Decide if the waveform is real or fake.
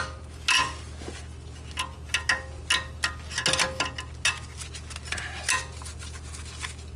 real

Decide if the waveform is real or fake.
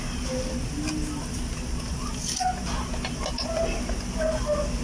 real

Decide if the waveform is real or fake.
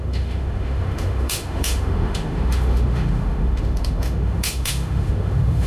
fake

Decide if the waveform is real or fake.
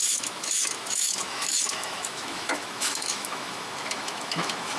fake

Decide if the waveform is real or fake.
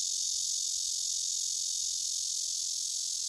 real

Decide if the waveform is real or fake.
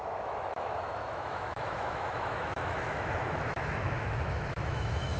fake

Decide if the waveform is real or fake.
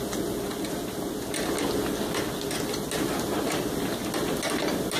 real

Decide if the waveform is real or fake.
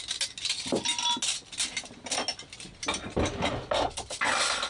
real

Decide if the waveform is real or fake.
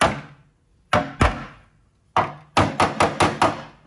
real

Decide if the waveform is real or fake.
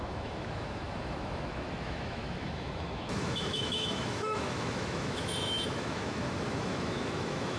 fake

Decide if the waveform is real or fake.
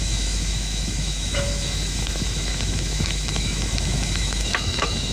fake